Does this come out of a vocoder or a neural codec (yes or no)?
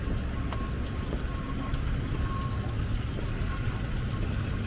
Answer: no